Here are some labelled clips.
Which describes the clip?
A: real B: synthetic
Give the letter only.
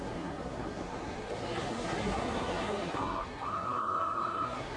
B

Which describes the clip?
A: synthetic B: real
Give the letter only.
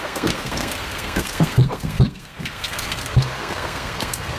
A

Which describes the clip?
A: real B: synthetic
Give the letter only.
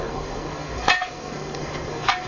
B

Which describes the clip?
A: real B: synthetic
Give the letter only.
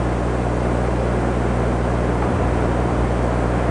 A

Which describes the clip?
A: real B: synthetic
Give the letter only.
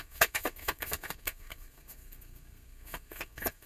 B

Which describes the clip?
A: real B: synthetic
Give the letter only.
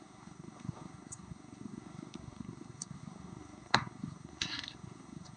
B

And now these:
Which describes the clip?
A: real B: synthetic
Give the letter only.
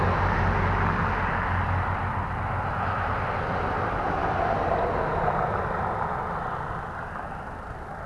A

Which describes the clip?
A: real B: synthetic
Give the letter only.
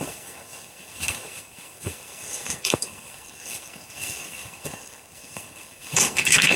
B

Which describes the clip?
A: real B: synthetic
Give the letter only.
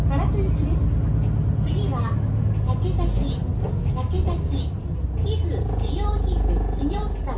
A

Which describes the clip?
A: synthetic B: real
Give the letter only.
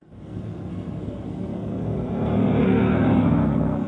A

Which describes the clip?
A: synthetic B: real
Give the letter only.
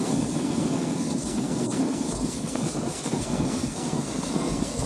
A